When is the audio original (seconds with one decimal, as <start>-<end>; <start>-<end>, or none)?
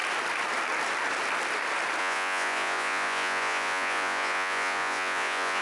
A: 0.0-2.0